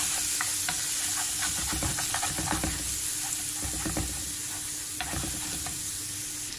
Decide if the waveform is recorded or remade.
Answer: recorded